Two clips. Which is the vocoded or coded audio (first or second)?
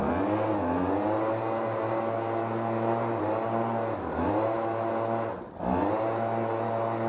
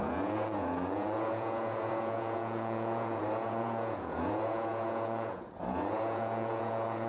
second